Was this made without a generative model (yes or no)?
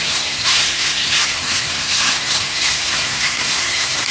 no